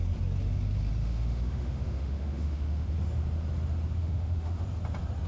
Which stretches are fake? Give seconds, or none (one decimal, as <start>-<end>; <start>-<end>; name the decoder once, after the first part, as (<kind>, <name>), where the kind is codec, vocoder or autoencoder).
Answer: 1.0-2.9 (autoencoder, DAC-VAE); 4.0-4.6